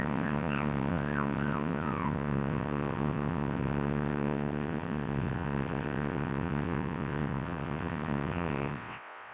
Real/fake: fake